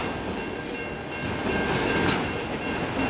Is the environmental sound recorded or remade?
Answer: recorded